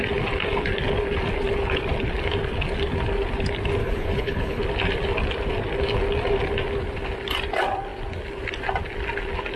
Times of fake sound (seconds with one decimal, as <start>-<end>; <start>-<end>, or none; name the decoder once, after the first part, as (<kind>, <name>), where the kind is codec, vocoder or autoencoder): 3.8-4.6 (codec, HILCodec)